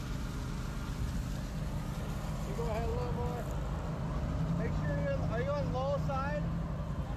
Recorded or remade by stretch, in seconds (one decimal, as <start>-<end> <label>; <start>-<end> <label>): 0.0-7.2 recorded